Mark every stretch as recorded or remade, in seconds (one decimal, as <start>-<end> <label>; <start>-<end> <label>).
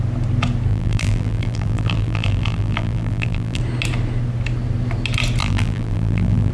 0.0-0.7 recorded; 0.7-3.6 remade; 3.6-5.4 recorded; 5.4-6.5 remade